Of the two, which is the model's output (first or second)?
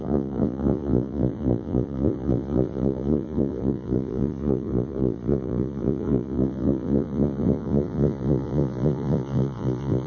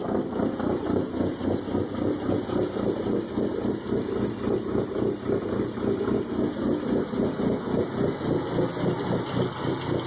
first